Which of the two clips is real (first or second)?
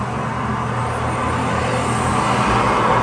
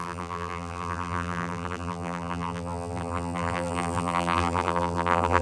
first